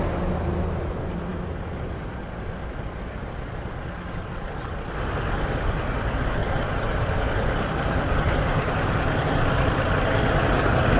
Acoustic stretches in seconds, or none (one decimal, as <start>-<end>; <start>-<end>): 0.0-6.4; 10.2-11.0